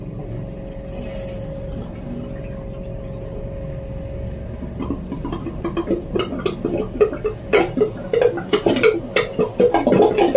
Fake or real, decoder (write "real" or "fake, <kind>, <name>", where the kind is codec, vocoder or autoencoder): real